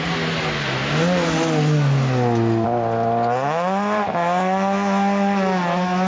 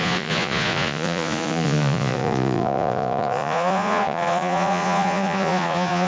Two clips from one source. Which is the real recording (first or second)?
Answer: first